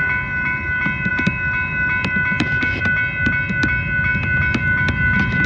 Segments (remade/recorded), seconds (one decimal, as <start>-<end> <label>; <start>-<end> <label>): 0.0-5.5 recorded